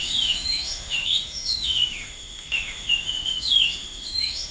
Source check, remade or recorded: remade